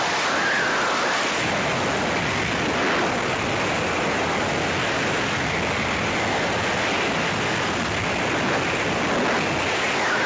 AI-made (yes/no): no